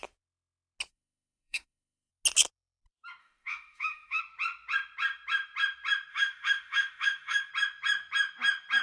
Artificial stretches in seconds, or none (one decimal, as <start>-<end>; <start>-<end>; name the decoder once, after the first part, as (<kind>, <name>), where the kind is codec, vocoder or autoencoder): 0.9-2.1 (autoencoder, DAC-VAE); 3.2-4.2; 6.1-7.5